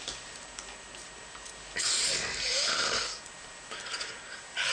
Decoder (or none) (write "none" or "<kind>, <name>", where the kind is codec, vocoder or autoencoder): none